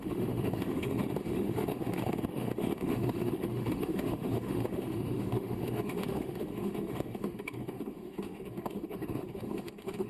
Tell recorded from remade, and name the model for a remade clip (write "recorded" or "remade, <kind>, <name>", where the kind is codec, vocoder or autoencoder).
remade, autoencoder, DAC-VAE